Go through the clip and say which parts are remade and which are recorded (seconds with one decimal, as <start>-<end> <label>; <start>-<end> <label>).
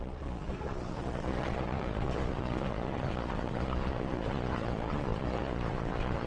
0.0-6.3 remade